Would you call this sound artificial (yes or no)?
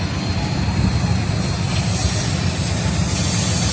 no